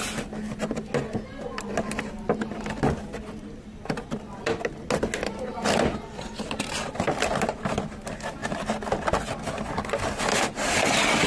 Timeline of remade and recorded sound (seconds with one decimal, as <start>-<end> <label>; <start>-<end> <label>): 0.0-11.3 recorded